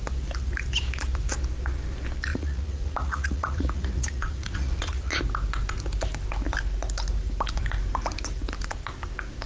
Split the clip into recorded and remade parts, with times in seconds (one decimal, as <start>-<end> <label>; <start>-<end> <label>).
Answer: 0.0-2.3 recorded; 2.3-5.2 remade; 5.2-9.5 recorded